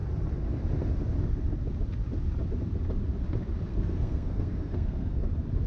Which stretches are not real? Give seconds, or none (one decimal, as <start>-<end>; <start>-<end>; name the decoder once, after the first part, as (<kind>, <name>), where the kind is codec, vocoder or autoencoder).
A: 3.7-5.3 (codec, SNAC)